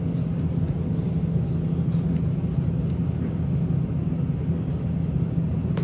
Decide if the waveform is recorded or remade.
recorded